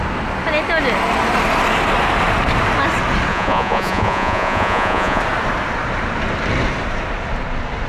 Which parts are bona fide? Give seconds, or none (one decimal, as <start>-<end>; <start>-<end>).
0.0-3.3; 5.2-7.9